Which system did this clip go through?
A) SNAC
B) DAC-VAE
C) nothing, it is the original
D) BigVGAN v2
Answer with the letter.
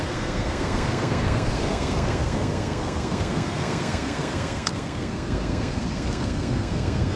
A